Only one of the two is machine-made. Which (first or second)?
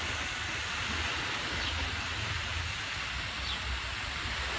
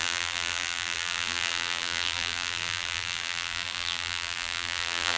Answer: second